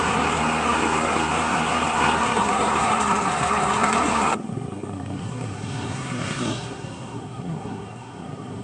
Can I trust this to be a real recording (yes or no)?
no